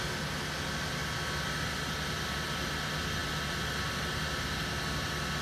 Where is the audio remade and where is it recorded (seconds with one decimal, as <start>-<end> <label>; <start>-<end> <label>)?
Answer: 0.0-5.4 recorded